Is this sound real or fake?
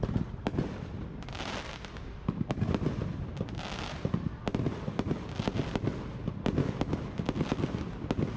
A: real